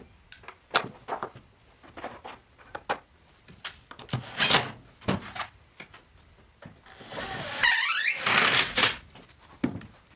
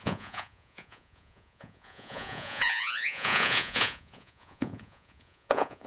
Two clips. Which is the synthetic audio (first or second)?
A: second